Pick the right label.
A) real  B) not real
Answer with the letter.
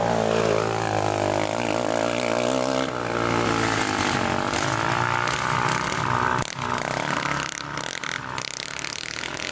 A